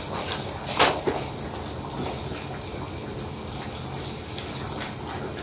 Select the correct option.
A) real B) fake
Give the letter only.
A